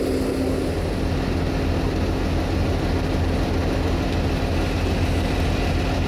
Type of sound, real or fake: real